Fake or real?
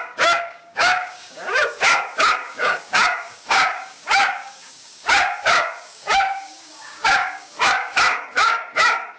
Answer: fake